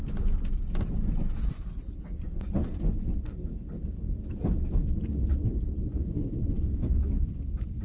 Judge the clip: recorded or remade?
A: recorded